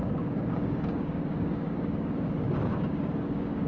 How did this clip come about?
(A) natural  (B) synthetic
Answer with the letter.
B